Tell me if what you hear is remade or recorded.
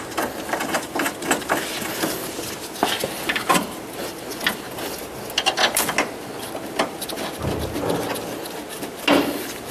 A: recorded